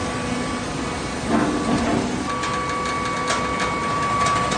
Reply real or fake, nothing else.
real